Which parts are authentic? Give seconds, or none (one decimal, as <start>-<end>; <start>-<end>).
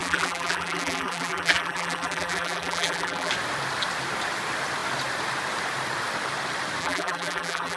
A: 3.3-6.8